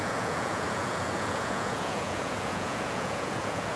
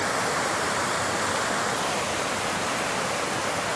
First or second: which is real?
second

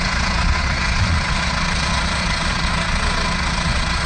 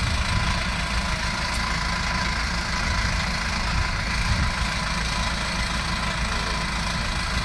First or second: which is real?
second